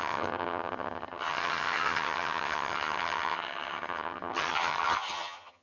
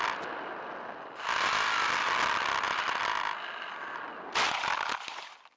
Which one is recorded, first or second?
second